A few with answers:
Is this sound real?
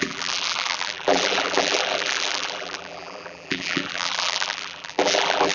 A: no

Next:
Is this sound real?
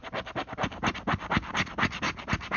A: yes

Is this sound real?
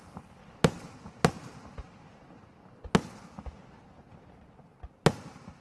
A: yes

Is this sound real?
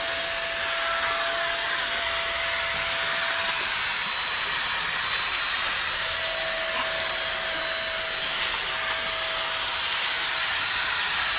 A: yes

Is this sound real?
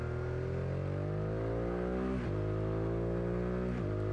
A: yes